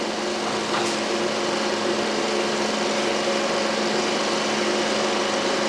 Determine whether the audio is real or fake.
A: real